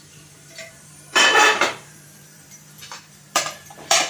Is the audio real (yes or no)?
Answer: no